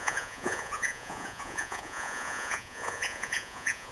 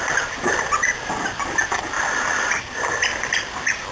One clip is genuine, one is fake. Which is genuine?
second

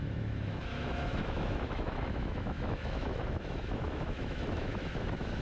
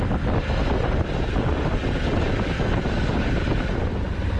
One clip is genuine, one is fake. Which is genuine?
second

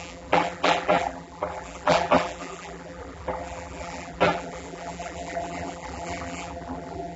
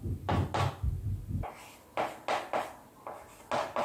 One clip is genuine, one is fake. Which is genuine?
second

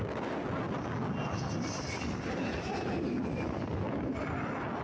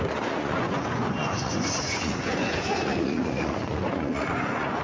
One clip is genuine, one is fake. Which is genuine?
first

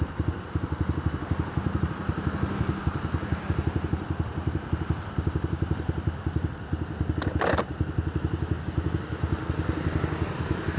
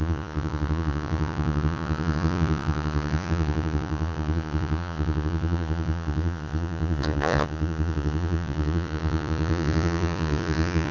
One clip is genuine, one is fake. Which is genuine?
first